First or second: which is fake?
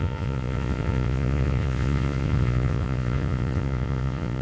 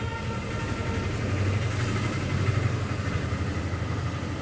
first